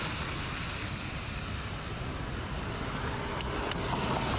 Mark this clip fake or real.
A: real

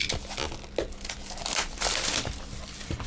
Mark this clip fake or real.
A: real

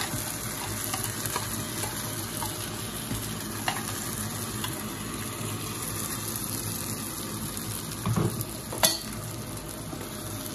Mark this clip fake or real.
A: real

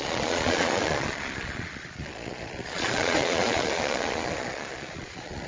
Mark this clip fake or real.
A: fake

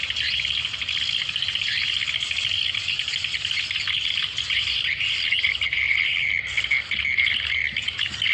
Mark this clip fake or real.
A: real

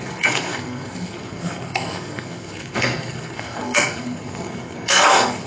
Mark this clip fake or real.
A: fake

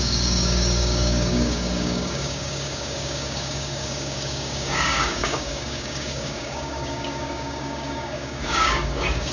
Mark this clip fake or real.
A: fake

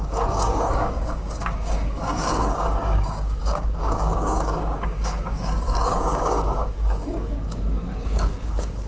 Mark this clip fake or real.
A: fake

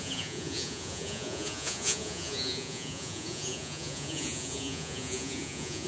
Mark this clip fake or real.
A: fake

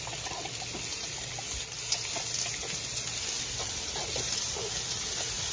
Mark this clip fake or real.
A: real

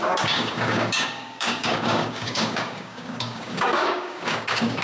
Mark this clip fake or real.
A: fake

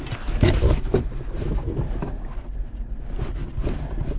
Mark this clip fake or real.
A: real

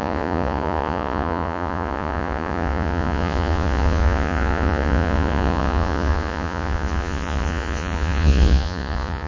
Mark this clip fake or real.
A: fake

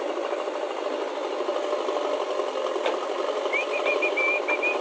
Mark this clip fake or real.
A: real